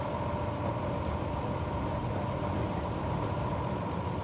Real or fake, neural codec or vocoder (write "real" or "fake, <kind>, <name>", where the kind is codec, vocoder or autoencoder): real